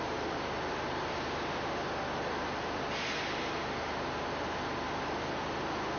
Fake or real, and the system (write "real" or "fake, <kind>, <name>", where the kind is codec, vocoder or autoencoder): real